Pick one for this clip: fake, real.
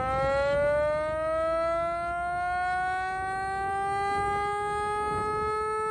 real